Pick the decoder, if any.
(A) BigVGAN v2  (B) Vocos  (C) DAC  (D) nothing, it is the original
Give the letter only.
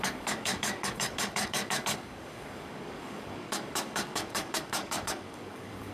C